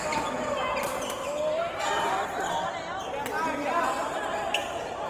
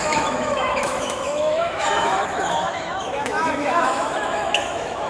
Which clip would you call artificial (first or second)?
second